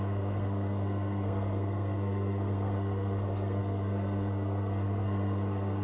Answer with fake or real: fake